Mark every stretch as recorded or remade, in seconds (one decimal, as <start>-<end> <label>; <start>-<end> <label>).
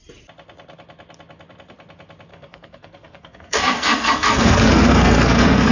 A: 0.0-2.3 recorded; 2.3-5.7 remade